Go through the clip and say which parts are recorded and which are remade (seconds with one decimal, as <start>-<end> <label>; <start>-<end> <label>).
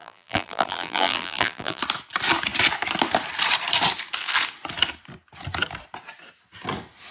0.0-1.8 remade; 1.8-7.1 recorded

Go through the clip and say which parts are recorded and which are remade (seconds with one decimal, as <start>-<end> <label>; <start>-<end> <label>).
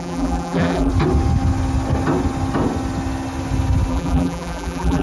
0.0-0.9 remade; 0.9-3.9 recorded; 3.9-5.0 remade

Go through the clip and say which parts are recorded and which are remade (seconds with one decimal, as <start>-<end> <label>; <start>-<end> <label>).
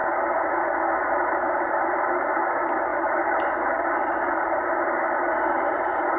0.0-0.6 recorded; 0.6-2.9 remade; 2.9-5.6 recorded; 5.6-6.2 remade